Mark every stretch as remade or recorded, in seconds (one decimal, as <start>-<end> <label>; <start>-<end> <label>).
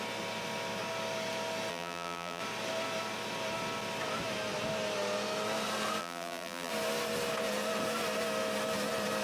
0.0-1.7 recorded; 1.7-2.4 remade; 2.4-6.0 recorded; 6.0-6.7 remade; 6.7-9.2 recorded